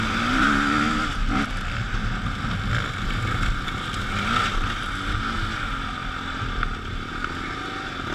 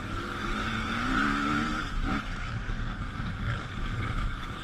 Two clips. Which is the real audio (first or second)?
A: first